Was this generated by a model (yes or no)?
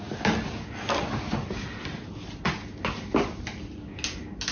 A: no